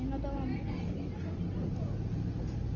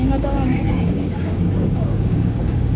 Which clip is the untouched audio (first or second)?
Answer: first